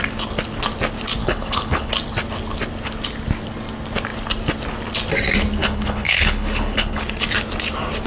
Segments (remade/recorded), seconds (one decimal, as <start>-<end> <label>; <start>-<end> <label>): 0.0-1.2 recorded; 1.2-1.9 remade; 1.9-5.6 recorded; 5.6-7.0 remade; 7.0-8.1 recorded